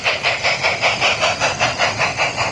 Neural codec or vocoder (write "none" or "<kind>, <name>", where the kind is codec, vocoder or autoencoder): none